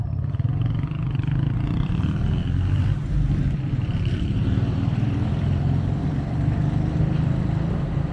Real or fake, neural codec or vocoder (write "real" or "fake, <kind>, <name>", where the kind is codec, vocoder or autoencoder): fake, vocoder, BigVGAN v2